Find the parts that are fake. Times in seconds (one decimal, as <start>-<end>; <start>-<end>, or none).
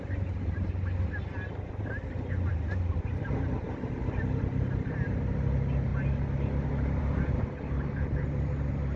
none